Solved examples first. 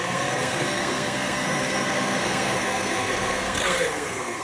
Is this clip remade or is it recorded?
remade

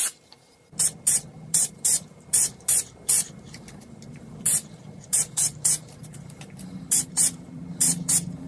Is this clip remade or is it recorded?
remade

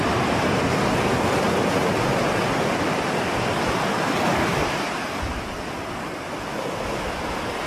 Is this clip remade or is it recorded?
recorded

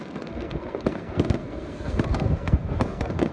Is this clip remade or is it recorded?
remade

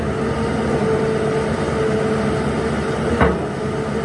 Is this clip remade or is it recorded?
recorded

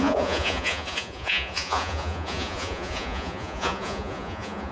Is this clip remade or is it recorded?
remade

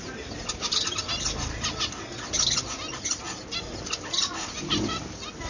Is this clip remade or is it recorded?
recorded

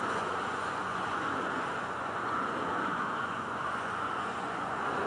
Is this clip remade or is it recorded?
remade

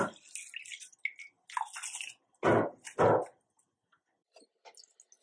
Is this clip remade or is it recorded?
recorded